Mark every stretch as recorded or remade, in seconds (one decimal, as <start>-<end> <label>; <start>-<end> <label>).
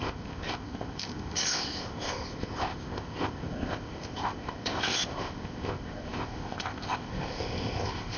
0.0-8.2 remade